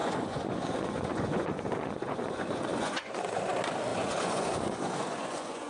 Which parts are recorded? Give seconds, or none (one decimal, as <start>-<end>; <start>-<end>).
3.4-3.9